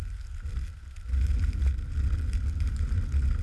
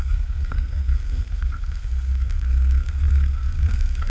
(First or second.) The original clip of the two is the first